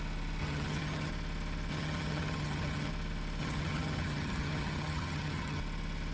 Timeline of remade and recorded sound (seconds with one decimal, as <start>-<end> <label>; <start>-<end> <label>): 0.0-0.4 recorded; 0.4-1.1 remade; 1.1-1.7 recorded; 1.7-2.9 remade; 2.9-3.4 recorded; 3.4-5.6 remade; 5.6-6.1 recorded